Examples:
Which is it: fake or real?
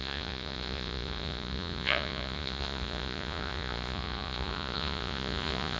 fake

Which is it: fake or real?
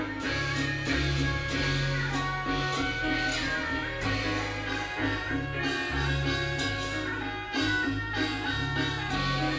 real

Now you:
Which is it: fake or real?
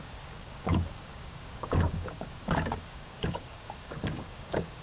fake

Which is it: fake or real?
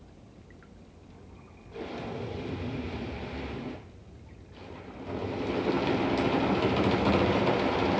real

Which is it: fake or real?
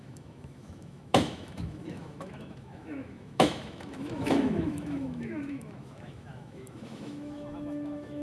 fake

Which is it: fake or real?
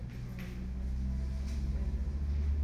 real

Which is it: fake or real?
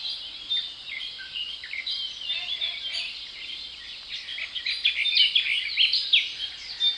real